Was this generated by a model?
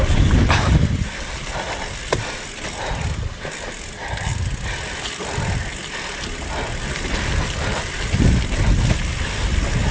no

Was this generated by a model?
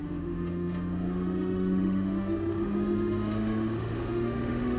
yes